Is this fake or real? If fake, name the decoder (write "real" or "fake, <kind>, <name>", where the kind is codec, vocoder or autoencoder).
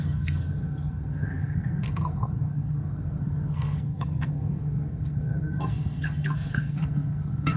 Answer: fake, codec, SNAC